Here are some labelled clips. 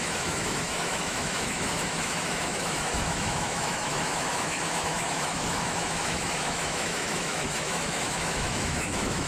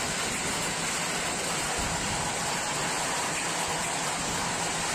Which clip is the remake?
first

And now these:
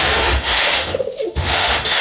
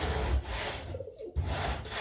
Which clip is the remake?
first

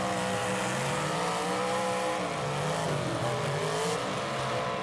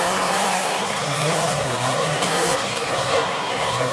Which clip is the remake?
second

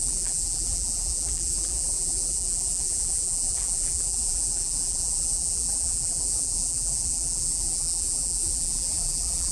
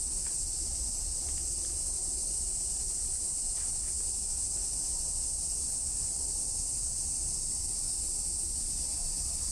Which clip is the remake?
first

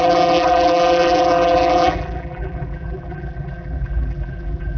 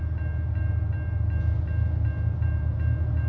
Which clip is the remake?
first